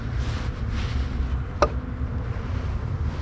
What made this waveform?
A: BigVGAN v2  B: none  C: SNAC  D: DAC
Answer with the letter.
B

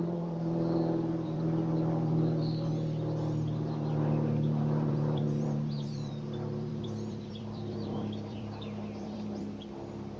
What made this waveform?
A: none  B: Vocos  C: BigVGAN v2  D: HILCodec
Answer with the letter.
C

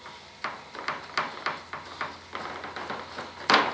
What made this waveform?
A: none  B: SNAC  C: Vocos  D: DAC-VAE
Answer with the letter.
A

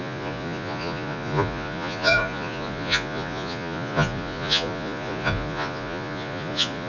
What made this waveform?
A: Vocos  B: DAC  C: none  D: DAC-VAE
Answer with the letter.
A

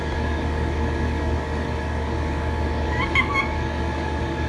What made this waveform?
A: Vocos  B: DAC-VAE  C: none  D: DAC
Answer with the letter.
D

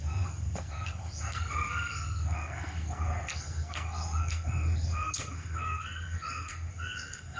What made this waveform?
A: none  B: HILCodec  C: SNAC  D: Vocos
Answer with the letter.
C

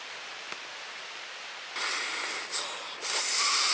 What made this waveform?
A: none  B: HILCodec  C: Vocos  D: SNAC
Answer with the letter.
A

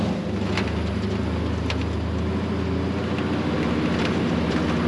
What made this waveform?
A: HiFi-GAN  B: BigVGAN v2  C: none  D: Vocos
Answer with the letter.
C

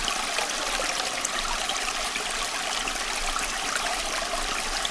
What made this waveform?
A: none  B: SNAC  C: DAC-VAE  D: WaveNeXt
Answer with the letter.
A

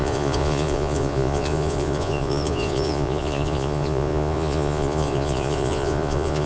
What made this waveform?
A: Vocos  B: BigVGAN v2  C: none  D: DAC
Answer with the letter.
A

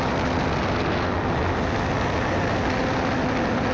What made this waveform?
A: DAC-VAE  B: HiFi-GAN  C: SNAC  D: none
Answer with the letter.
D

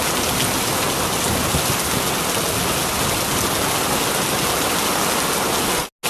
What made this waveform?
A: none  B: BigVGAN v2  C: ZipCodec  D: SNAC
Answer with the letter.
A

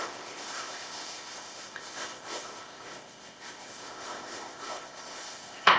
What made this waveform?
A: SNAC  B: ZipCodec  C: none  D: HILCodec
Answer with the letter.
B